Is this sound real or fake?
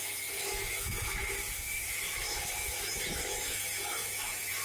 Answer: fake